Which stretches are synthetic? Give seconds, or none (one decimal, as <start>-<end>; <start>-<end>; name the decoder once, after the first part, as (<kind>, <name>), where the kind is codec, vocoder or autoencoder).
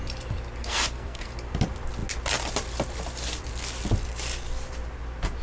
0.6-1.3 (codec, SNAC)